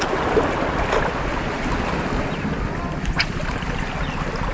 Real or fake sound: real